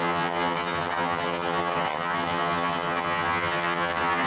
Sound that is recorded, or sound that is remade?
remade